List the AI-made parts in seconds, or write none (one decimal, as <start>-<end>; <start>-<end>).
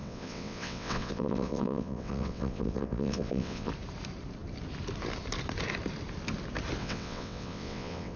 0.0-3.7; 6.8-8.2